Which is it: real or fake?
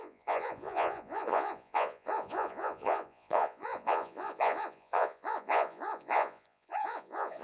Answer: fake